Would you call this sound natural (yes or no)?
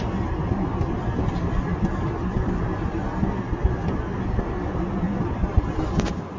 yes